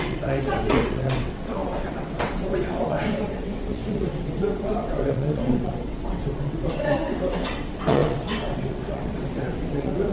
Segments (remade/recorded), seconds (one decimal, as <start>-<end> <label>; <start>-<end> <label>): 0.0-10.1 remade